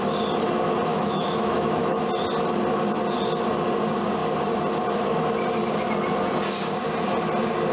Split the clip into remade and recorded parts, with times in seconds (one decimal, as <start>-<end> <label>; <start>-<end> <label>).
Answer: 0.0-0.9 recorded; 0.9-2.0 remade; 2.0-7.7 recorded